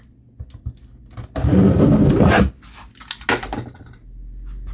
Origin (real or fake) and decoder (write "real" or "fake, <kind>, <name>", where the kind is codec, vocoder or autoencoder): real